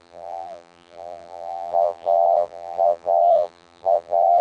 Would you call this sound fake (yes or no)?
yes